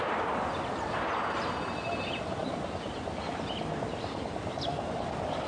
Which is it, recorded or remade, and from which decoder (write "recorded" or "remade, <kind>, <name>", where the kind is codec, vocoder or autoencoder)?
recorded